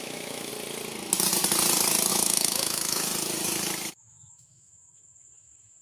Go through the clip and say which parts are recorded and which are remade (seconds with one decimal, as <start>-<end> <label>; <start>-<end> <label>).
0.0-0.5 remade; 0.5-2.1 recorded; 2.1-3.1 remade; 3.1-3.9 recorded; 3.9-5.8 remade